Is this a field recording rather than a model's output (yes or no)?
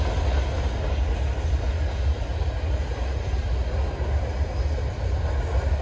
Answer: yes